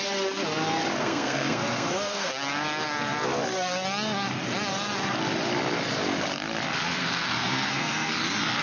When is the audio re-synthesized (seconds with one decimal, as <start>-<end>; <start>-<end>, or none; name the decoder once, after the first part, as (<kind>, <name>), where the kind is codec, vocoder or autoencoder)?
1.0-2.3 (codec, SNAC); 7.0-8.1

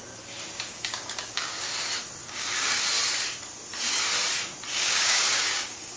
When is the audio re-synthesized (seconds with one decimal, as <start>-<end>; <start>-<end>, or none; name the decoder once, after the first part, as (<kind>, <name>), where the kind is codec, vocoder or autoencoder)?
0.7-1.7 (codec, DAC); 2.2-2.8; 4.7-6.0

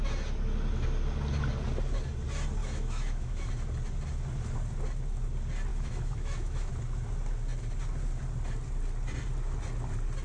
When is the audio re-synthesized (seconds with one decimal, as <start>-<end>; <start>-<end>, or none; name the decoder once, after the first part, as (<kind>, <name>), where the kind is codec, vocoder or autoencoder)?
2.6-3.5 (autoencoder, DAC-VAE); 5.7-6.7